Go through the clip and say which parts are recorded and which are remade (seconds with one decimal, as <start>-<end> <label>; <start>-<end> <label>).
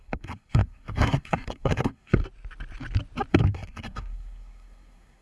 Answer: 0.0-2.2 remade; 2.2-3.3 recorded; 3.3-5.2 remade